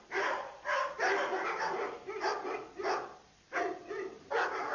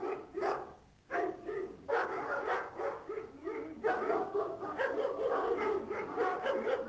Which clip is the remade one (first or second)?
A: second